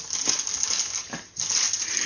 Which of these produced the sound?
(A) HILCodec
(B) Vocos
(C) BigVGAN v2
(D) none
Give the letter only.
D